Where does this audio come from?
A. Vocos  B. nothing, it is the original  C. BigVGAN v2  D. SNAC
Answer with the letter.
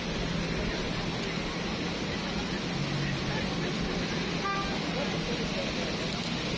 B